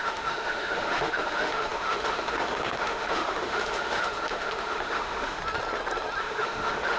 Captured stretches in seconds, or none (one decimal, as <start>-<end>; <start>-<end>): 5.4-6.2